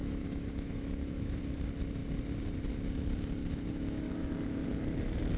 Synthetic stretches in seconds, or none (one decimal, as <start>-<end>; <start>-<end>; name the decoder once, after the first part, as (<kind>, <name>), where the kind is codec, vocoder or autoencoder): 0.0-1.4 (autoencoder, DAC-VAE)